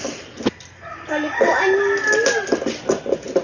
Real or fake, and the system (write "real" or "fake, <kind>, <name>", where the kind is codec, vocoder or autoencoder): real